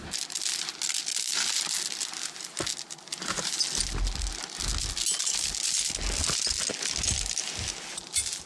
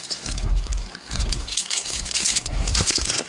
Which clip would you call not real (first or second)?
second